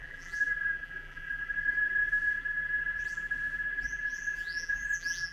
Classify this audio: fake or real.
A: fake